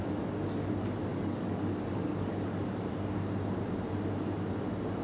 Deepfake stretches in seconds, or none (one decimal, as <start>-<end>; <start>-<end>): 1.1-2.9